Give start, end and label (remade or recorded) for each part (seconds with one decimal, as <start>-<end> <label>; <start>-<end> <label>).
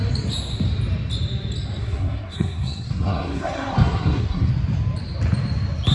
0.0-1.8 recorded; 1.8-4.5 remade; 4.5-5.9 recorded